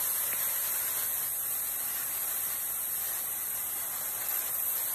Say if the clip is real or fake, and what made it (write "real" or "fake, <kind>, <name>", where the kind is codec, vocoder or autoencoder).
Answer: real